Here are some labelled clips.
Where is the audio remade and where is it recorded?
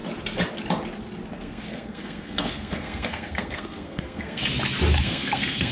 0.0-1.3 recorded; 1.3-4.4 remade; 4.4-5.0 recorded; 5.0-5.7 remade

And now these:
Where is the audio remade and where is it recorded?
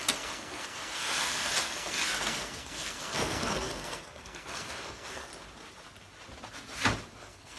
0.0-5.3 remade; 5.3-7.1 recorded; 7.1-7.6 remade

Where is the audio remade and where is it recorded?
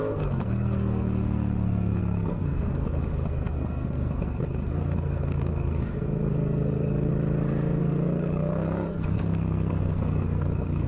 0.0-7.1 remade; 7.1-7.8 recorded; 7.8-10.9 remade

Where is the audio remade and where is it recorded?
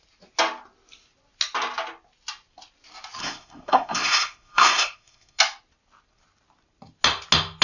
0.0-3.2 recorded; 3.2-5.4 remade; 5.4-7.6 recorded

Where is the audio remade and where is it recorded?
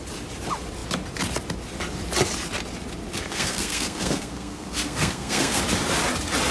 0.0-3.1 recorded; 3.1-5.6 remade; 5.6-6.5 recorded